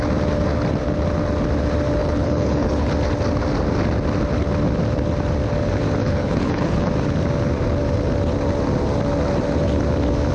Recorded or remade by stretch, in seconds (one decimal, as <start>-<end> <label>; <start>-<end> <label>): 0.0-2.0 recorded; 2.0-2.9 remade; 2.9-6.0 recorded; 6.0-6.9 remade; 6.9-10.3 recorded